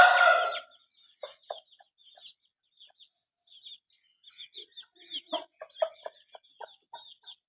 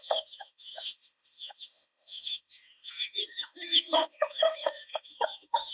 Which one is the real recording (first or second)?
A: first